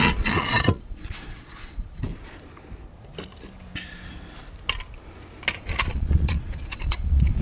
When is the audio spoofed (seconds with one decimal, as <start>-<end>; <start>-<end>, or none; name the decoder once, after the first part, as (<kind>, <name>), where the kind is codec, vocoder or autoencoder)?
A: 0.0-2.1 (vocoder, Vocos); 5.6-7.4